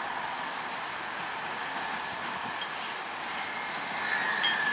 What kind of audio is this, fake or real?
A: real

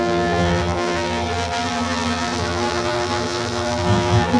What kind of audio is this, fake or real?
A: fake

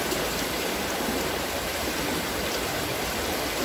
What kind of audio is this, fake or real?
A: real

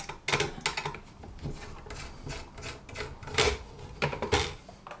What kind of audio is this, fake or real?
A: real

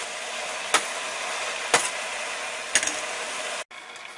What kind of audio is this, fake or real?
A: real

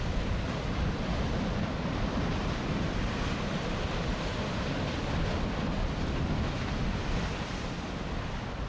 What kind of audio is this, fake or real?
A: fake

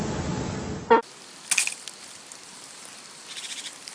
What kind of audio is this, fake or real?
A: real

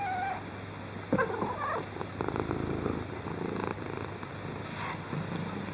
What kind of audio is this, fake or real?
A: real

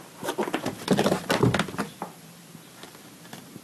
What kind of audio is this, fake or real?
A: real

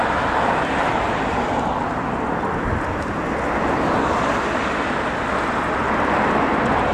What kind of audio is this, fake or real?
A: real